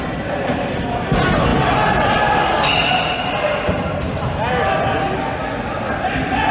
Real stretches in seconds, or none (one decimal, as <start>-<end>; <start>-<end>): 0.0-6.5